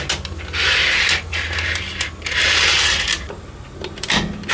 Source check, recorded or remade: recorded